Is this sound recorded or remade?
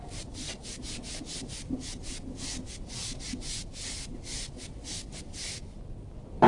recorded